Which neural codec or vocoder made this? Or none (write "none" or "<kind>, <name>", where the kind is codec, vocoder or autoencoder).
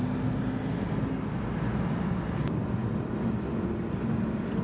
none